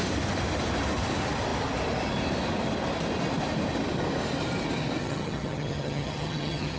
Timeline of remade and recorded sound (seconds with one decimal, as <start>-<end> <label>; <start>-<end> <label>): 0.0-5.0 recorded; 5.0-6.8 remade